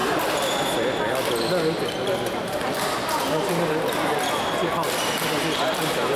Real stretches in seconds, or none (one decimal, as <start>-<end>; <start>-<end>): 0.0-6.2